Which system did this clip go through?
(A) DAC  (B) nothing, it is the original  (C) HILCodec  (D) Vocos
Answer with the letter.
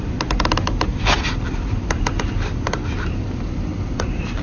B